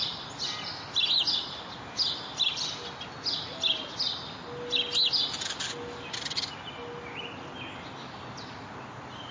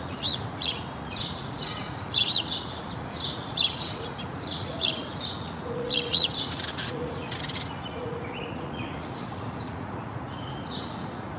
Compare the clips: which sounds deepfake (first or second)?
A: second